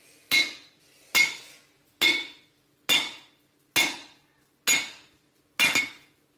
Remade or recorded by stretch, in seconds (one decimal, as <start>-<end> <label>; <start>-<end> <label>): 0.0-6.4 recorded